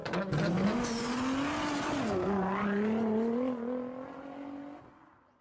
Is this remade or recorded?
recorded